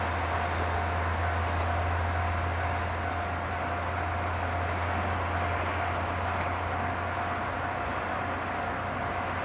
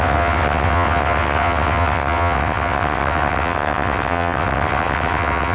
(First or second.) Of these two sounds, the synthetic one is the second